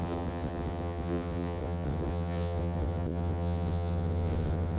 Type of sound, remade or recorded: remade